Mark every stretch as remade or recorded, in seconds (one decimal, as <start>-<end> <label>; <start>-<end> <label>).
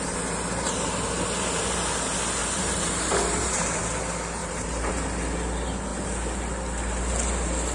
0.0-2.4 recorded; 2.4-3.8 remade; 3.8-4.4 recorded; 4.4-4.9 remade; 4.9-7.7 recorded